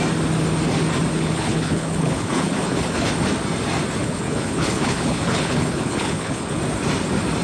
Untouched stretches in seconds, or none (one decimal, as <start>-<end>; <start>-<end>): 0.0-1.1; 3.1-4.0; 6.6-7.4